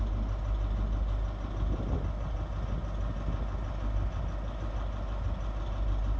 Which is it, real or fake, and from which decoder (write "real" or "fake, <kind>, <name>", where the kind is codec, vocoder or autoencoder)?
real